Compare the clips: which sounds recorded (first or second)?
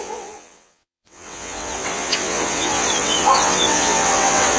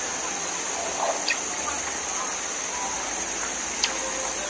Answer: second